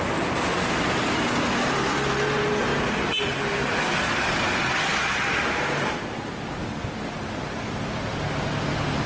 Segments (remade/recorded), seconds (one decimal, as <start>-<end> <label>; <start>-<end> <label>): 0.0-9.1 recorded